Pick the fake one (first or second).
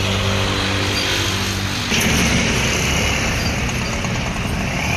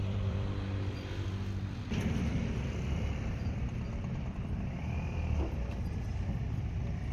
second